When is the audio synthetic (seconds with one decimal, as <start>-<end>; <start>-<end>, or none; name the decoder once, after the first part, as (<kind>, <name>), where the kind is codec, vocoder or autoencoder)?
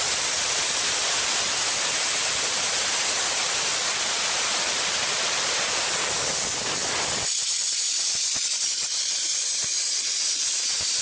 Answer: none